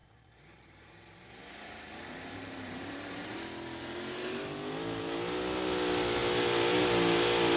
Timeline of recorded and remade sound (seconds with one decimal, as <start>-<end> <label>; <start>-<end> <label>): 0.0-3.3 remade; 3.3-7.6 recorded